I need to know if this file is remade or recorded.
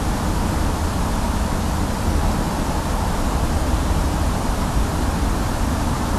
remade